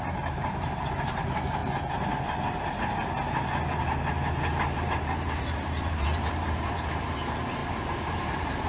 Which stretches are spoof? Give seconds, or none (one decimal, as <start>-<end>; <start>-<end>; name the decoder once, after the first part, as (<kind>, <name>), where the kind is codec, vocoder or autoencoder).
0.0-1.6 (vocoder, BigVGAN v2); 4.8-8.7

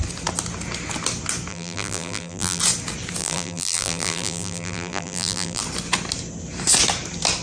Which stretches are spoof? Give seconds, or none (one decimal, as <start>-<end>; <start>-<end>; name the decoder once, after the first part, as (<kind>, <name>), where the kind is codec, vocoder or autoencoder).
1.5-2.6 (vocoder, BigVGAN v2); 3.2-5.6

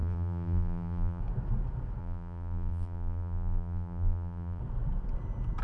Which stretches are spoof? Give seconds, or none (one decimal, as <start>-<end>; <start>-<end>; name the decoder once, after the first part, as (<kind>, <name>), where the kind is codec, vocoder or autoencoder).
0.0-1.2 (vocoder, BigVGAN v2); 2.0-4.6

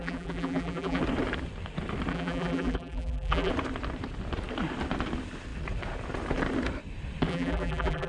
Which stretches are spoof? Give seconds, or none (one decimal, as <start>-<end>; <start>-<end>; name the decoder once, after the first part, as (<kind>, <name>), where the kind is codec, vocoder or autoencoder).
0.0-1.0 (vocoder, BigVGAN v2); 2.1-3.5; 7.3-8.1

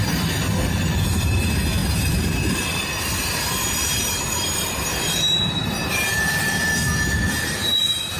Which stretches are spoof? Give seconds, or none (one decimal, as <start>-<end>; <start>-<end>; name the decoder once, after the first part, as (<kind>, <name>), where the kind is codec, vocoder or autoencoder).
1.8-6.7 (vocoder, BigVGAN v2)

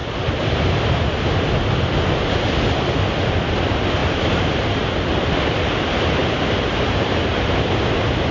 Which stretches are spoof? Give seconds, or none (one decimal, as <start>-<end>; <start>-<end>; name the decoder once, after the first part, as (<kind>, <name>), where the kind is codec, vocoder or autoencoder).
0.0-1.4 (vocoder, BigVGAN v2); 4.0-4.6; 6.2-7.4

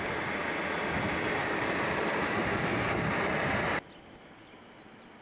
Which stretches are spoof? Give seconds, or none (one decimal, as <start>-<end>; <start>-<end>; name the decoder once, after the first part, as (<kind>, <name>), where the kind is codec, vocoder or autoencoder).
none